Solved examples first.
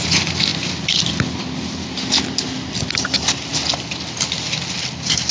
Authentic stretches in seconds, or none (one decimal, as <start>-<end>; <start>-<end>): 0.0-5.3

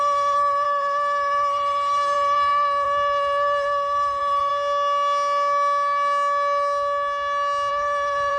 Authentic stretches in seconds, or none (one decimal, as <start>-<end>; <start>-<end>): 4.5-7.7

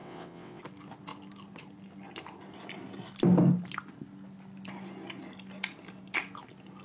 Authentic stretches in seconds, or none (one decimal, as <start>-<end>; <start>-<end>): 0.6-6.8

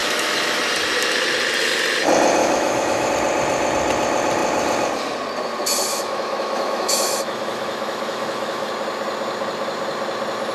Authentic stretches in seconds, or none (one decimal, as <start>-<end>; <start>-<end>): 0.6-2.4; 3.1-5.9; 8.7-10.5

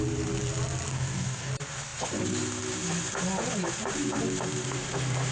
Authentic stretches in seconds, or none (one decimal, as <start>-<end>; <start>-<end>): 0.0-0.9; 1.5-5.3